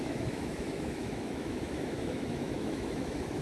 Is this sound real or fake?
fake